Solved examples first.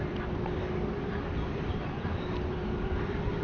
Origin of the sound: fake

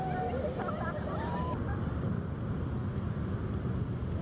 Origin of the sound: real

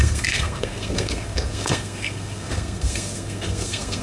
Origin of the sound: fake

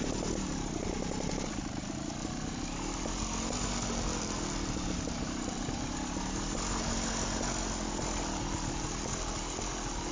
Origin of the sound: real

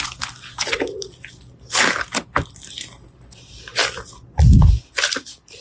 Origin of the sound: real